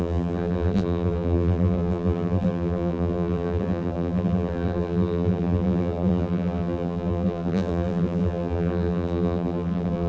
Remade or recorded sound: remade